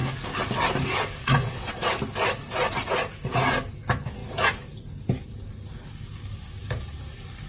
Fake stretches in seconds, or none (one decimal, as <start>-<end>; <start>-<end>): 1.2-1.9